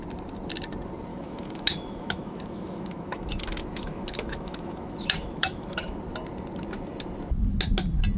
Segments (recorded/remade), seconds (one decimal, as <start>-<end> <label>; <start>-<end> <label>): 0.0-1.1 recorded; 1.1-6.0 remade; 6.0-8.2 recorded